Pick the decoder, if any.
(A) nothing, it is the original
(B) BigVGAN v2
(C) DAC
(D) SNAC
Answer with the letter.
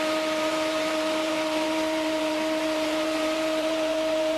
B